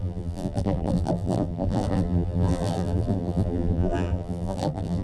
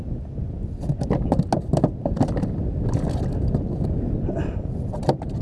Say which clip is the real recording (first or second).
second